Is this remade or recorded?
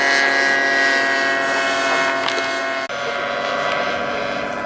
recorded